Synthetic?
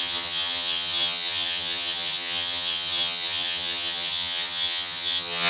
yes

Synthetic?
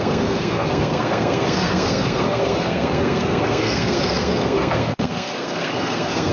yes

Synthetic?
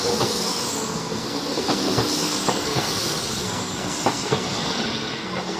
yes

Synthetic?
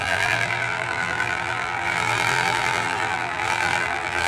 yes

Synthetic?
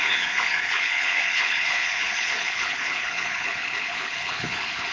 yes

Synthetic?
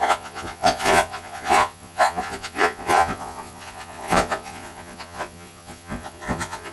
yes